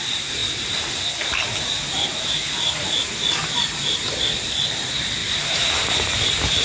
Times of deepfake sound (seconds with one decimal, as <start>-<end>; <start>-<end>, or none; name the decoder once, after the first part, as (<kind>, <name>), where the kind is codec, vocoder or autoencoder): 0.4-1.1 (vocoder, BigVGAN v2); 2.1-3.3; 5.2-5.9

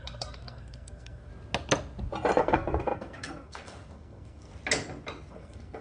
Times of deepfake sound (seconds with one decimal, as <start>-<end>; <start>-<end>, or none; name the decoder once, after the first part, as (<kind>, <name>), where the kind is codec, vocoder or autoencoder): 0.0-1.3 (codec, SNAC); 2.4-4.5; 5.3-5.8

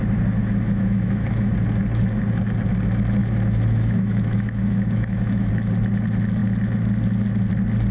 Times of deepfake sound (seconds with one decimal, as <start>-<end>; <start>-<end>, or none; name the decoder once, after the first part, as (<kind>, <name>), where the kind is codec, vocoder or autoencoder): 0.4-1.5 (autoencoder, DAC-VAE); 3.2-5.5

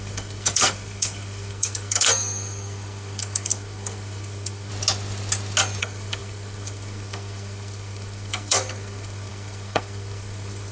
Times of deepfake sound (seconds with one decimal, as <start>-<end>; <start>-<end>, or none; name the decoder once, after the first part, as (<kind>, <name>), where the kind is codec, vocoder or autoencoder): 0.0-4.7 (codec, SNAC); 5.8-10.7